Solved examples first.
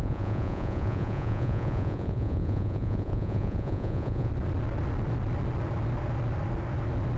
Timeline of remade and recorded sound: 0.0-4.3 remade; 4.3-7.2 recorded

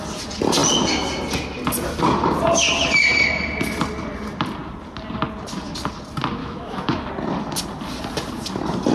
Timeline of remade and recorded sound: 0.0-6.4 recorded; 6.4-7.1 remade; 7.1-8.9 recorded

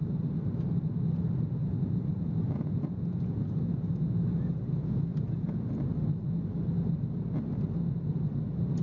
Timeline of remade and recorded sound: 0.0-1.6 recorded; 1.6-5.7 remade; 5.7-8.8 recorded

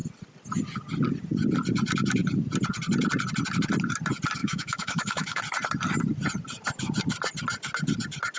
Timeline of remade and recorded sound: 0.0-4.4 recorded; 4.4-5.4 remade; 5.4-8.4 recorded

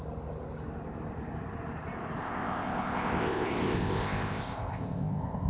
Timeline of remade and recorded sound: 0.0-2.2 recorded; 2.2-5.5 remade